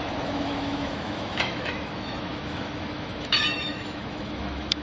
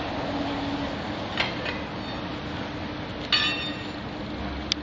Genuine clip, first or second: second